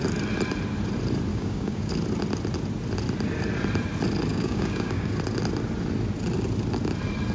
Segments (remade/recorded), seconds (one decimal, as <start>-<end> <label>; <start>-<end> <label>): 0.0-1.3 recorded; 1.3-1.9 remade; 1.9-4.3 recorded; 4.3-5.1 remade; 5.1-7.3 recorded